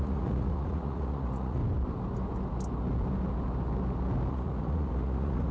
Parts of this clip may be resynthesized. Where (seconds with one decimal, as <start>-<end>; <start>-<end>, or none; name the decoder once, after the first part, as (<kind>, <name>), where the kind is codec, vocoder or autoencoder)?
0.0-1.6 (vocoder, Vocos); 4.3-5.5